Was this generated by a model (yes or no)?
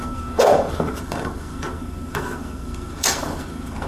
yes